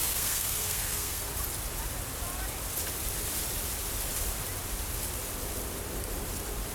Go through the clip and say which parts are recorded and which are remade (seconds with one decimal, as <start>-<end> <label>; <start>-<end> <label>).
0.0-1.3 remade; 1.3-6.7 recorded